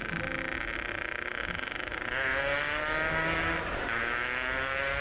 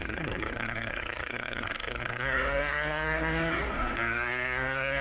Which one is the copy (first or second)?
second